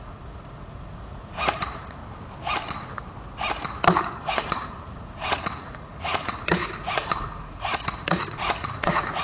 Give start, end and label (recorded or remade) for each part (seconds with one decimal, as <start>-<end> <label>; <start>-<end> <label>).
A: 0.0-2.0 remade; 2.0-4.0 recorded; 4.0-9.2 remade